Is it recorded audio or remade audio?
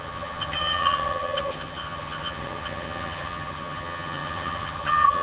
remade